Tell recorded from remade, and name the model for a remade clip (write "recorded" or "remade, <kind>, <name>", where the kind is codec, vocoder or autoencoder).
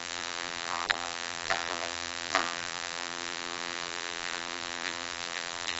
remade, vocoder, BigVGAN v2